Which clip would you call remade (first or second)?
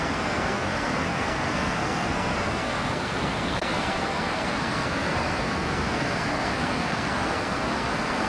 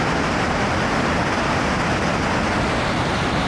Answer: first